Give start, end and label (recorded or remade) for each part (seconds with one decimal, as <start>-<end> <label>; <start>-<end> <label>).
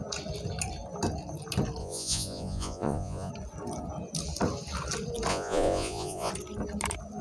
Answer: 0.0-1.8 recorded; 1.8-3.3 remade; 3.3-5.3 recorded; 5.3-6.3 remade; 6.3-7.2 recorded